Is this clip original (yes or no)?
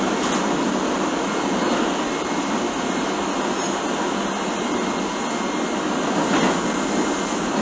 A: yes